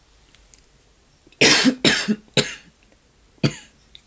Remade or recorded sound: recorded